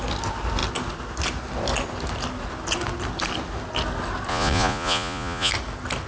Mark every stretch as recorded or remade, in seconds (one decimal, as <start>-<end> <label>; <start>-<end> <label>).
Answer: 0.0-4.3 recorded; 4.3-5.5 remade; 5.5-6.1 recorded